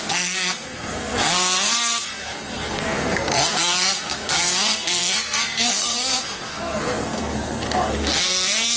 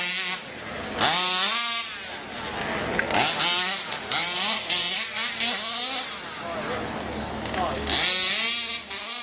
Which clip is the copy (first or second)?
first